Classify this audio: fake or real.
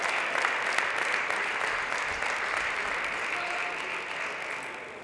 real